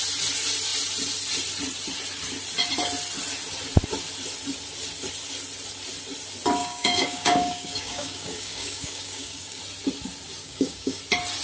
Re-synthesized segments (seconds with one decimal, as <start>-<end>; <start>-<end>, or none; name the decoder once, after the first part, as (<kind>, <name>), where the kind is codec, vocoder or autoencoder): 6.6-9.6 (codec, DAC); 10.4-11.0